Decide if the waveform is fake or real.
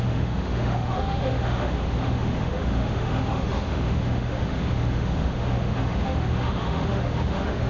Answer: fake